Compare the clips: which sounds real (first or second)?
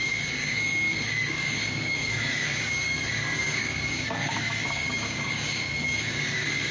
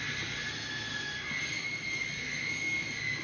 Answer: second